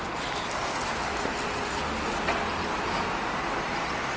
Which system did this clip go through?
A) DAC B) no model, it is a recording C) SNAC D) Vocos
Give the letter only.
B